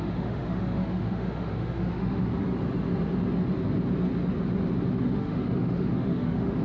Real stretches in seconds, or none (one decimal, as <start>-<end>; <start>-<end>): 2.3-5.0